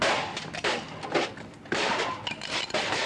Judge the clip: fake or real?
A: real